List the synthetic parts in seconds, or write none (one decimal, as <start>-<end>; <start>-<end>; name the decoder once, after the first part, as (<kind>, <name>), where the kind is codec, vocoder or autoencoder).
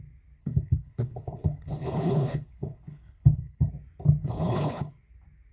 0.4-3.7 (codec, HILCodec); 4.2-4.9